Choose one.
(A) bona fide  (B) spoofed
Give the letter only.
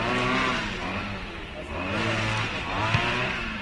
B